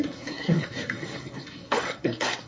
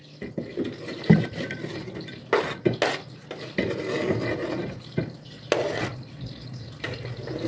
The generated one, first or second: first